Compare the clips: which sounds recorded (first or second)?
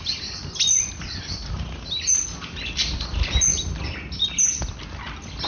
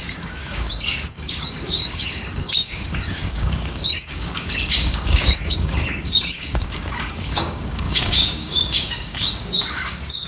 first